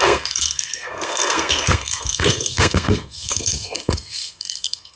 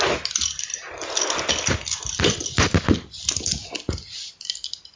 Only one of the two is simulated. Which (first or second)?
first